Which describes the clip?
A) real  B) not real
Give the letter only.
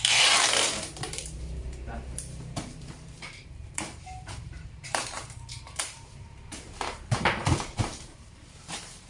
B